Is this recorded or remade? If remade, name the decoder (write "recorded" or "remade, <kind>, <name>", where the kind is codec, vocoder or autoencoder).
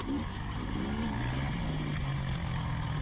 recorded